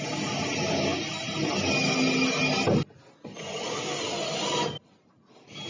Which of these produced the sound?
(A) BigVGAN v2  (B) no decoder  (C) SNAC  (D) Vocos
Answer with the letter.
B